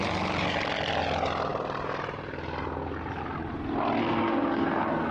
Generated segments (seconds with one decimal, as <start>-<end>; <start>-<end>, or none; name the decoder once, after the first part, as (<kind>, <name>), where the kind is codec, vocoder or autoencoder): 4.0-5.1 (codec, SNAC)